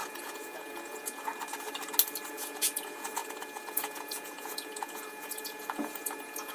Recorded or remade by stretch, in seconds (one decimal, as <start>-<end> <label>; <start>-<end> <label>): 0.0-1.3 remade; 1.3-2.3 recorded; 2.3-6.5 remade